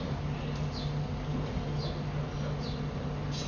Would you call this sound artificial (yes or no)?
no